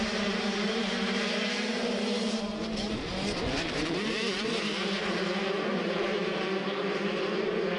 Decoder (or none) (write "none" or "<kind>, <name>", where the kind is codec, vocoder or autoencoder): vocoder, BigVGAN v2